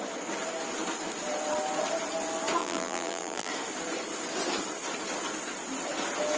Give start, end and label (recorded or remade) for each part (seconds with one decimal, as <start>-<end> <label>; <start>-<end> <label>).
0.0-2.6 recorded; 2.6-3.5 remade; 3.5-6.4 recorded